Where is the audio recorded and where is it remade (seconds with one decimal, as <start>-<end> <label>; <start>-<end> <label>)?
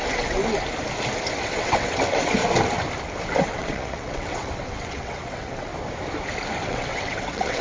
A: 0.0-0.4 remade; 0.4-1.4 recorded; 1.4-2.4 remade; 2.4-3.4 recorded; 3.4-5.7 remade; 5.7-6.6 recorded; 6.6-7.6 remade